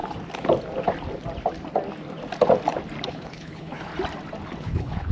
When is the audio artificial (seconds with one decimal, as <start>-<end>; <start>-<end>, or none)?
3.1-3.9; 4.6-5.1